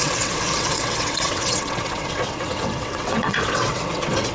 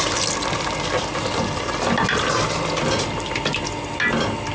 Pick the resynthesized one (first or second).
first